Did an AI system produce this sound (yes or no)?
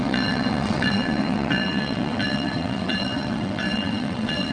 yes